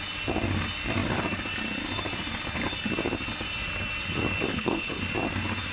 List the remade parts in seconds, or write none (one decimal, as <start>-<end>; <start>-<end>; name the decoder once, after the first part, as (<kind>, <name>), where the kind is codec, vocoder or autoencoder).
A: 4.5-5.0 (codec, HILCodec)